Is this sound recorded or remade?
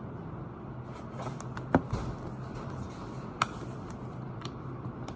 recorded